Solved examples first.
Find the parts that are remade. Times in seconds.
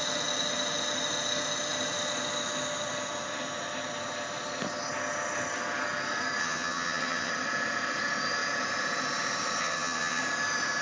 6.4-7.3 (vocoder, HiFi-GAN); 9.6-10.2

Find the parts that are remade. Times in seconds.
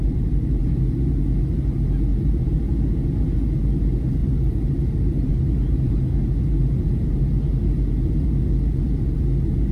0.0-0.6 (vocoder, BigVGAN v2); 2.1-2.9; 4.2-6.1; 6.6-7.2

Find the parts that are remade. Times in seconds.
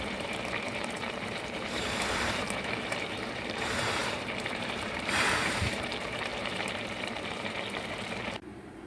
0.0-8.9 (vocoder, BigVGAN v2)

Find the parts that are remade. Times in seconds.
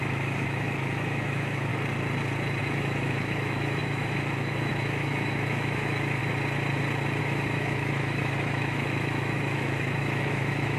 0.0-1.7 (autoencoder, DAC-VAE); 2.6-6.2; 7.2-10.8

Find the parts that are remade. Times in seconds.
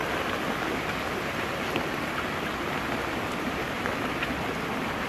none